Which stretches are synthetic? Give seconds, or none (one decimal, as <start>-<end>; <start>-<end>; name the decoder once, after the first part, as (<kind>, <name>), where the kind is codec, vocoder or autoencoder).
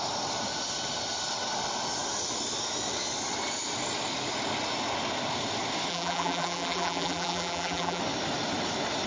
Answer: 5.9-8.0 (vocoder, BigVGAN v2)